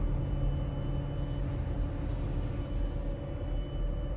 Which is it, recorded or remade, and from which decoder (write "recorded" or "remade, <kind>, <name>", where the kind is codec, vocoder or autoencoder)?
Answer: recorded